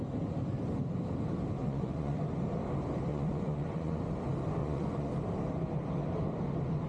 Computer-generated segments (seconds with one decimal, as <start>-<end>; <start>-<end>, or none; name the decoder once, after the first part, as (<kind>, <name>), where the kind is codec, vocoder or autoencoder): 1.6-2.2 (vocoder, Vocos); 3.1-4.0; 4.6-5.1